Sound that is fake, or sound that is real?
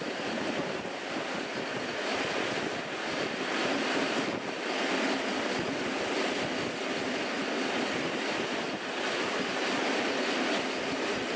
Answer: real